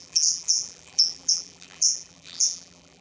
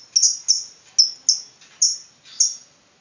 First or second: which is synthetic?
first